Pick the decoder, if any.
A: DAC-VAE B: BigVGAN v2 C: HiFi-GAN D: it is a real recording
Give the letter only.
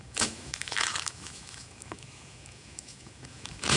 A